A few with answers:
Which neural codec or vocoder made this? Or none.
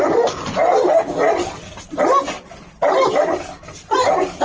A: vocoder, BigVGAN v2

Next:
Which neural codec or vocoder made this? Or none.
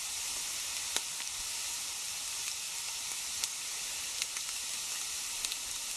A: none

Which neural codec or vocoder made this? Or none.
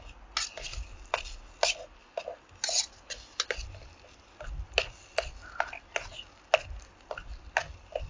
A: none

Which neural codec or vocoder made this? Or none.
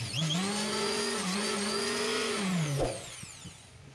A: vocoder, Vocos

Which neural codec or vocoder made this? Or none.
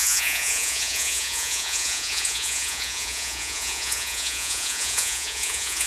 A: vocoder, Vocos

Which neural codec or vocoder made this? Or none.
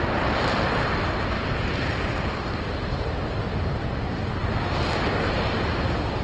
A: none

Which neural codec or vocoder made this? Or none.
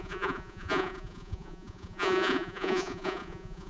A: vocoder, Vocos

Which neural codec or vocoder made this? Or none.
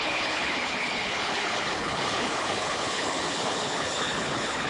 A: codec, HILCodec